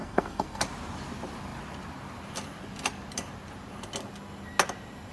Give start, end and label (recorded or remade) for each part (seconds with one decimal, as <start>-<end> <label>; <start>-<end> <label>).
0.0-0.6 remade; 0.6-5.1 recorded